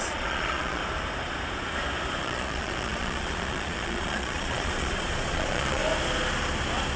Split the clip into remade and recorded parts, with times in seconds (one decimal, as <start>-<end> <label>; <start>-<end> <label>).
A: 0.0-0.8 remade; 0.8-2.2 recorded; 2.2-5.8 remade; 5.8-7.0 recorded